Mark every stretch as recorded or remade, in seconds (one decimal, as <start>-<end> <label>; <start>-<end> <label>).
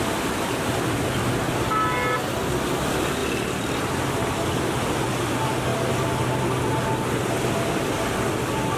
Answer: 0.0-8.8 recorded